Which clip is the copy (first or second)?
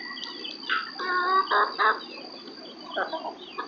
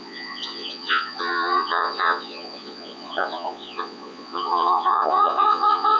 second